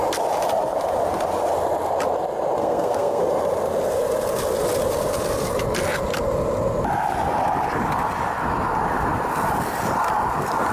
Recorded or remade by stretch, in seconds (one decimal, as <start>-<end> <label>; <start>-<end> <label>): 0.0-2.6 recorded; 2.6-3.2 remade; 3.2-10.7 recorded